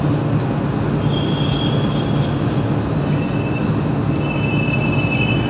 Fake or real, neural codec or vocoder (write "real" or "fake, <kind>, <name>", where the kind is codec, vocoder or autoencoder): real